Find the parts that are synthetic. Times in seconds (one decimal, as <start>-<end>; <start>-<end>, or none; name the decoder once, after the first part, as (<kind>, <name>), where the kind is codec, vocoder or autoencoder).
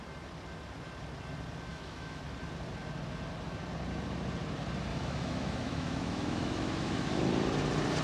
1.7-2.2 (autoencoder, DAC-VAE); 4.9-7.2